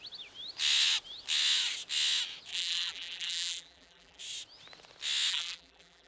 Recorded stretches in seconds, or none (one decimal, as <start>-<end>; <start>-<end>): 0.0-2.5; 4.2-5.3